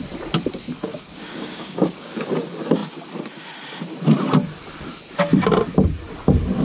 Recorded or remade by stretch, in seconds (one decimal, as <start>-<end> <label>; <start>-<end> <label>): 0.0-0.9 recorded; 0.9-2.3 remade; 2.3-6.6 recorded